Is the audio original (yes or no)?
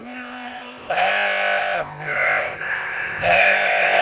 no